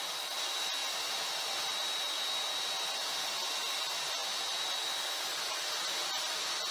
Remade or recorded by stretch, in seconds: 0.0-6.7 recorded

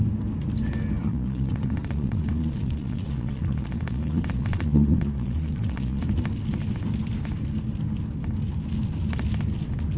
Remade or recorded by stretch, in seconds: 0.0-1.0 recorded; 1.0-6.0 remade; 6.0-10.0 recorded